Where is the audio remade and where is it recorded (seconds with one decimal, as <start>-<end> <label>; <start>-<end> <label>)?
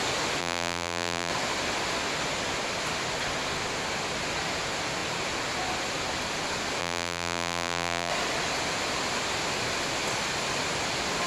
0.0-0.4 recorded; 0.4-1.3 remade; 1.3-6.8 recorded; 6.8-8.1 remade; 8.1-11.3 recorded